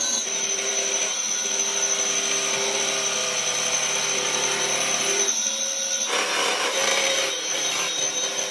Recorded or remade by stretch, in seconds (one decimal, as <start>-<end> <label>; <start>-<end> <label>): 0.0-8.5 recorded